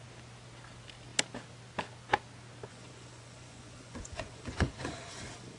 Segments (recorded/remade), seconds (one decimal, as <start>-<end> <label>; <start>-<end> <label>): 0.0-2.7 recorded; 2.7-5.6 remade